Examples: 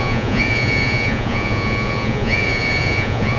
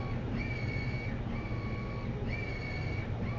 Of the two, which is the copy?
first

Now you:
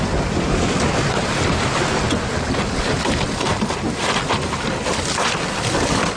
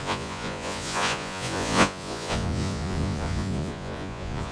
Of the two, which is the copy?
second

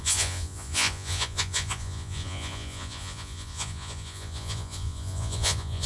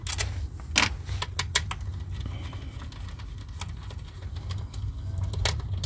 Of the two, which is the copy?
first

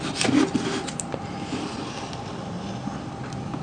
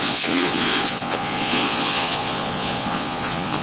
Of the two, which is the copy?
second